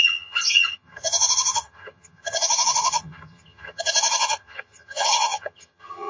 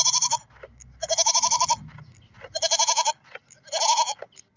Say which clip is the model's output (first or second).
first